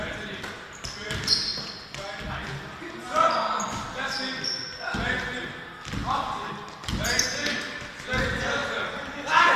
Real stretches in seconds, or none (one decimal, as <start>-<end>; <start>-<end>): 0.0-6.0; 6.5-9.6